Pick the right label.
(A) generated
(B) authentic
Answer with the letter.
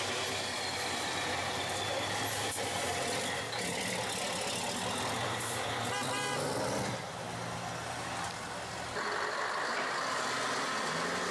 B